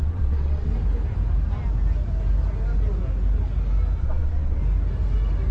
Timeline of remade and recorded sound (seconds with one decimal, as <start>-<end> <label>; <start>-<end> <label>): 0.0-0.7 remade; 0.7-4.0 recorded; 4.0-4.6 remade; 4.6-5.5 recorded